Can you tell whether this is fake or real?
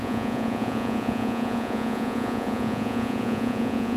fake